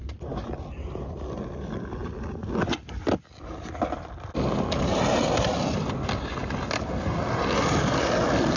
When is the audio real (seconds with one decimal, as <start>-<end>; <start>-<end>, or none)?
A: 0.0-8.6